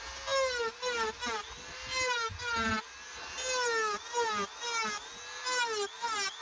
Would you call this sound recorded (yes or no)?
yes